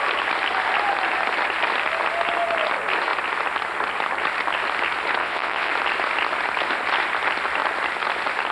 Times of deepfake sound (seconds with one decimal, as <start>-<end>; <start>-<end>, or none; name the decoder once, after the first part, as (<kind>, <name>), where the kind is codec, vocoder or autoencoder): 5.2-5.7 (vocoder, WaveNeXt)